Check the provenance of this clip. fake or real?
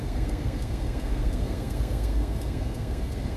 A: fake